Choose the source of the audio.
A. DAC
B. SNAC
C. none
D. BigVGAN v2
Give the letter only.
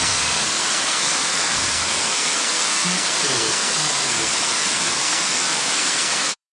B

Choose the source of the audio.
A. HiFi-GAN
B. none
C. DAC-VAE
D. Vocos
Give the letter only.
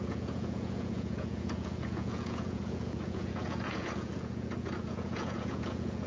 D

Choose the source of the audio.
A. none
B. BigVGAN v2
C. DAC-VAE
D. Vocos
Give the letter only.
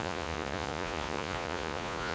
D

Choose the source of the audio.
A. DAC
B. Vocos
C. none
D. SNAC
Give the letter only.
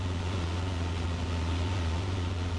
B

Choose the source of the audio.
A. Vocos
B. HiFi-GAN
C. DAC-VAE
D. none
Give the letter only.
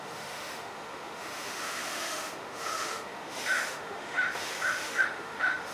C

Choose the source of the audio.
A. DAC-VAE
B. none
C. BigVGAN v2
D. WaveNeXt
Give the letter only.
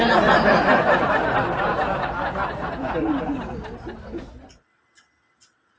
B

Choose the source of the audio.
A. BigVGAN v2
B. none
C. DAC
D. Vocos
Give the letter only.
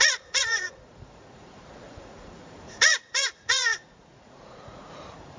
D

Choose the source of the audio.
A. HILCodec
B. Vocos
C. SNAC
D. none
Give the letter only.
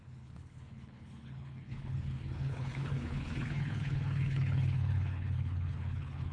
A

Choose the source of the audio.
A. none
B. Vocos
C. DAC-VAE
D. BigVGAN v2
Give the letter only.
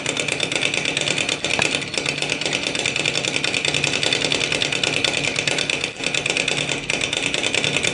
A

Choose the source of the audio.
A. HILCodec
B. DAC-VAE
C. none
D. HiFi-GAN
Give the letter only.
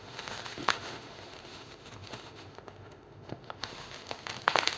B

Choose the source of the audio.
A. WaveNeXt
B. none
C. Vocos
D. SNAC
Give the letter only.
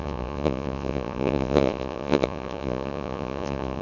C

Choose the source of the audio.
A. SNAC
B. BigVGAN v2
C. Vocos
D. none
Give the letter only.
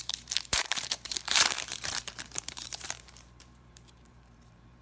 B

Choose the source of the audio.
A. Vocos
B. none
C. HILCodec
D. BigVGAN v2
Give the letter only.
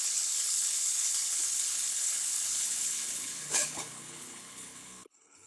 C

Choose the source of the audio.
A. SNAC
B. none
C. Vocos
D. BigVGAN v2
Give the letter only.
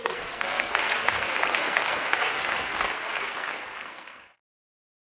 A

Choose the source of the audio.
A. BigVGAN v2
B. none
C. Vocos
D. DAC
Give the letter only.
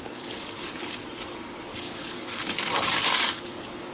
D